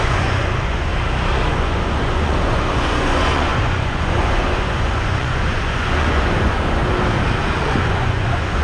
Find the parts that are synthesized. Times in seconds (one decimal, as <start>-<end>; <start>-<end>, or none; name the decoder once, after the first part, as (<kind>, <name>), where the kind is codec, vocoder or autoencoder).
0.0-0.9 (vocoder, Vocos); 1.5-6.8; 7.4-8.6